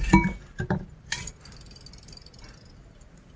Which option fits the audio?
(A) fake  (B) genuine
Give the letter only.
B